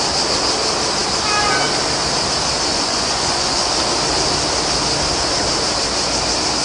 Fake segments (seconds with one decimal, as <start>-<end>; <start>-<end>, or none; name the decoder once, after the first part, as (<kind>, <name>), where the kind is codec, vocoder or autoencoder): 2.7-3.7 (vocoder, Vocos)